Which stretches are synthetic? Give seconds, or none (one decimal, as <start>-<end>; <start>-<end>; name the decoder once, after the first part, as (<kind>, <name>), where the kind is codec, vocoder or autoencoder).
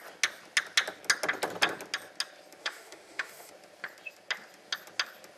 2.6-3.5 (autoencoder, DAC-VAE)